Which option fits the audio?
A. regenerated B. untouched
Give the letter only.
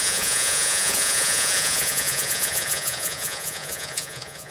A